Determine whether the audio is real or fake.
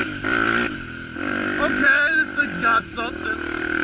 fake